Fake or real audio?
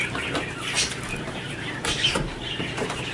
fake